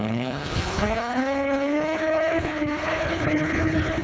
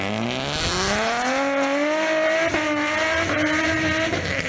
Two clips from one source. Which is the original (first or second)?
second